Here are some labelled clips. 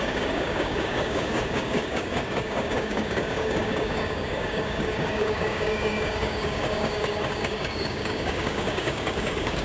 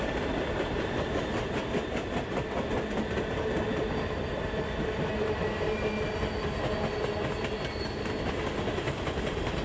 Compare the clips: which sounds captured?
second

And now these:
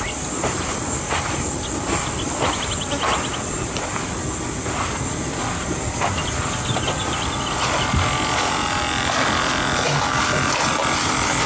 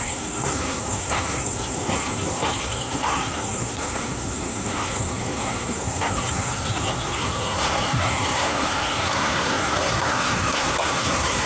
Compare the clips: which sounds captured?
first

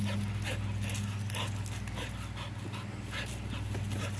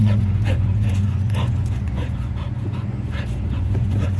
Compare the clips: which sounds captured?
first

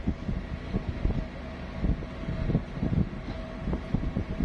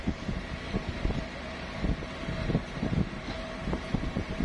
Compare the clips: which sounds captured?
first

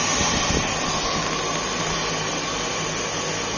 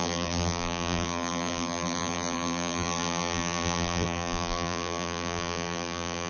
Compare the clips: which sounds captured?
first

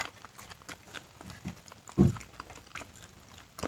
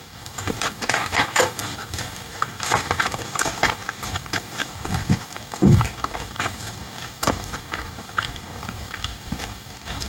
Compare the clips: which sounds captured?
first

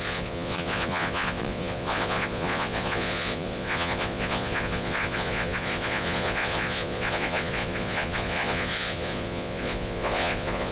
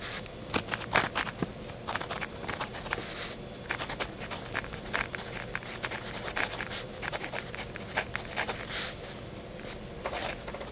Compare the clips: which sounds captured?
second